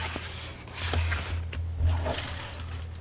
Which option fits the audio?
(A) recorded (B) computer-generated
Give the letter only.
A